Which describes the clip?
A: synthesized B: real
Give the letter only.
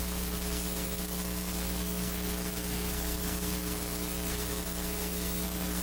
A